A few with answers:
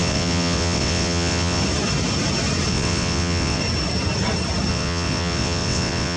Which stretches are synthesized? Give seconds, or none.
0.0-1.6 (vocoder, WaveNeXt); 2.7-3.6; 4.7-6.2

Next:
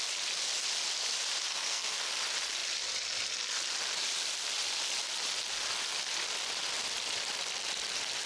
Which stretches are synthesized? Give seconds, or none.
1.5-2.1 (codec, SNAC)

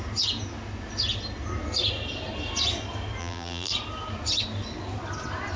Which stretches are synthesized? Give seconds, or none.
3.2-3.7 (vocoder, BigVGAN v2)

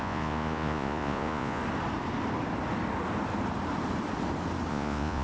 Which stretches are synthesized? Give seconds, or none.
0.0-1.6 (vocoder, Vocos); 4.7-5.2

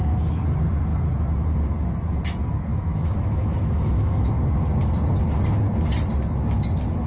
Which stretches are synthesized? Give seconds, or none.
2.7-4.3 (autoencoder, DAC-VAE)

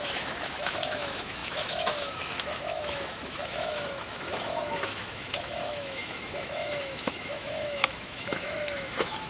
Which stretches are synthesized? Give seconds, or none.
0.0-9.3 (autoencoder, DAC-VAE)

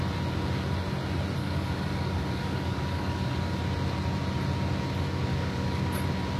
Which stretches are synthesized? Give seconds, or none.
1.4-3.6 (codec, DAC); 5.3-5.8

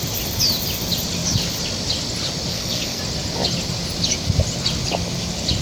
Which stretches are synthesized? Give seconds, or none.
2.5-3.0 (codec, SNAC)